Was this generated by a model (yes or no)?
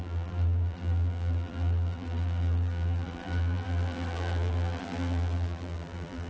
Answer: yes